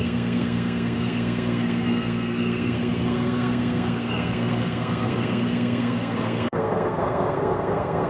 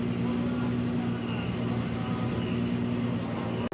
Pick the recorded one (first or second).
second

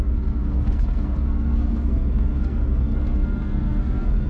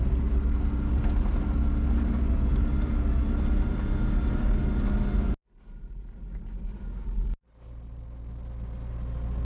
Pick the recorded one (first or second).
second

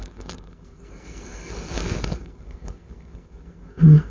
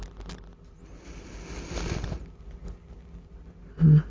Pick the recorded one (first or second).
second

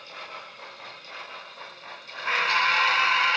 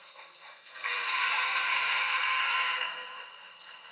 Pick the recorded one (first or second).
first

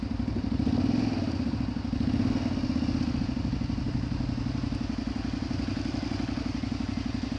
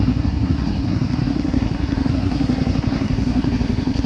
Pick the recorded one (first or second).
first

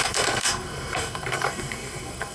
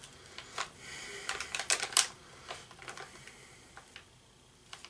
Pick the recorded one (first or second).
second